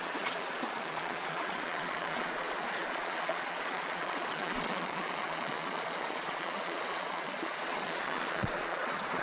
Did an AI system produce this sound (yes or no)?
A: yes